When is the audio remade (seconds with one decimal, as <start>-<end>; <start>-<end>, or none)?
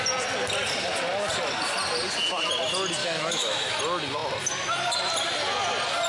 3.0-3.8